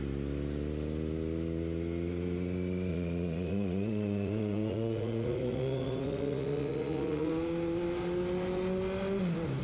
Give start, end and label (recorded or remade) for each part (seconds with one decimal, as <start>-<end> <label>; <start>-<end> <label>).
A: 0.0-2.9 recorded; 2.9-7.3 remade; 7.3-9.6 recorded